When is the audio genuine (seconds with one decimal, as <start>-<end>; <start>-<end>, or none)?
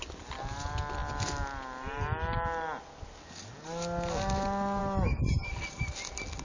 0.0-6.4